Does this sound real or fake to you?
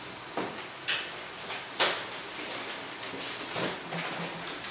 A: real